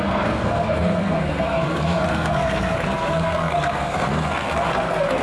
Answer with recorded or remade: remade